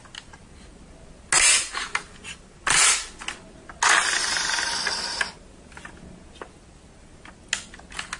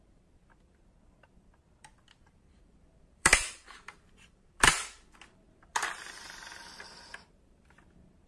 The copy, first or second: second